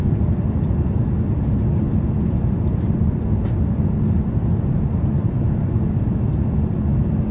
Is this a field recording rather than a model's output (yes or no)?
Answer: yes